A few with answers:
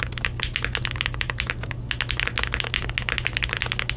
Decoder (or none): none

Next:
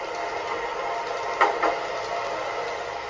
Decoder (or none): none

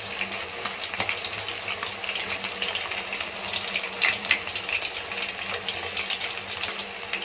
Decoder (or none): none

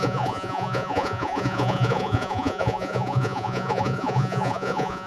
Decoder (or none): vocoder, Vocos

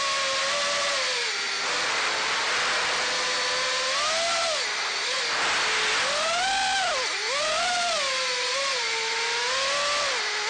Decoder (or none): none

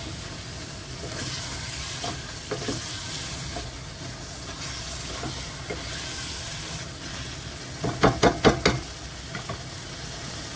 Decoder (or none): none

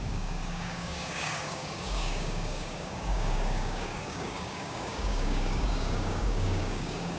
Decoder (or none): codec, DAC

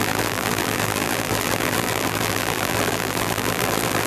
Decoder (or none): vocoder, BigVGAN v2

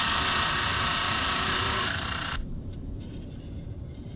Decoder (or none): vocoder, BigVGAN v2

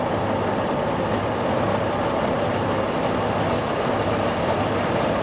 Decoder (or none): none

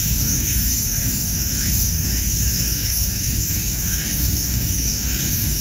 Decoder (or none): codec, DAC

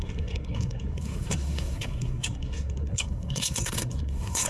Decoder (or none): codec, SNAC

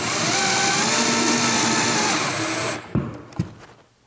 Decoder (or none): none